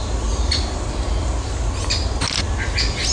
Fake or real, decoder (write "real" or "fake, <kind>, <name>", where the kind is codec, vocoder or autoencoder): real